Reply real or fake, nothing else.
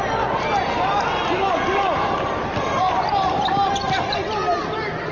real